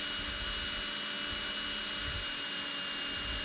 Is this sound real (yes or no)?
yes